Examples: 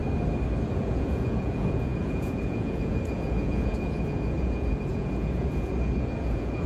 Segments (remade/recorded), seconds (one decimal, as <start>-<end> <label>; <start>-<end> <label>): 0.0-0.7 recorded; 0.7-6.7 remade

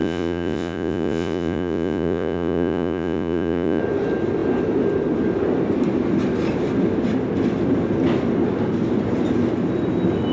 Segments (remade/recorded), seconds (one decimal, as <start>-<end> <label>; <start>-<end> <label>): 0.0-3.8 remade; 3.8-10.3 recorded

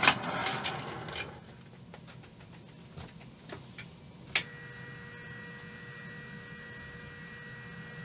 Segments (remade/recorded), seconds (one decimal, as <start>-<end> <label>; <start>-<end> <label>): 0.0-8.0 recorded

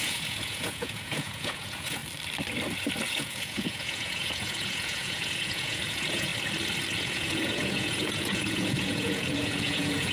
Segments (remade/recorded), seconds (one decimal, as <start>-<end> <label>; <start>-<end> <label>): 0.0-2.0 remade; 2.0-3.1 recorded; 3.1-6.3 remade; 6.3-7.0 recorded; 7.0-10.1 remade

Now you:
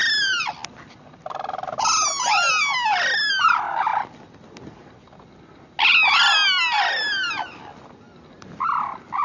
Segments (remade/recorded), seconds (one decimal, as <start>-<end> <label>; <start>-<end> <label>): 0.0-9.2 recorded